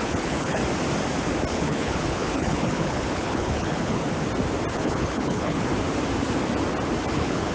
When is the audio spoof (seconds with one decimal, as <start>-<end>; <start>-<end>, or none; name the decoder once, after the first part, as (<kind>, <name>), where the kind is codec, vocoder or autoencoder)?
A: 0.0-0.6 (codec, HILCodec); 1.5-4.0; 4.7-5.7; 7.1-7.5